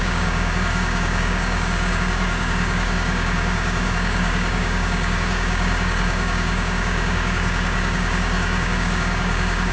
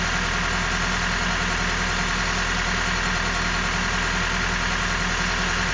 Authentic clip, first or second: second